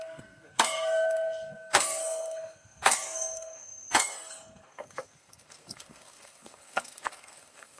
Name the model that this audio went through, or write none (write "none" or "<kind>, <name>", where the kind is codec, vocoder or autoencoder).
codec, SNAC